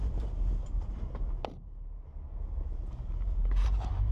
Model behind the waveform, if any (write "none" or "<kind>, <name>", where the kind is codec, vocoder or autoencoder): vocoder, BigVGAN v2